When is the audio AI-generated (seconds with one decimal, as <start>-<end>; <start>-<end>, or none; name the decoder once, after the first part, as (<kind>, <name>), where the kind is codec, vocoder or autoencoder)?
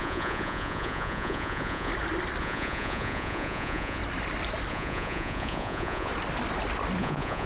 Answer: 0.0-1.9 (vocoder, Vocos); 2.4-4.0; 4.7-6.1; 7.0-7.5